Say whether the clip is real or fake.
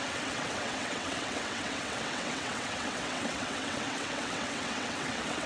fake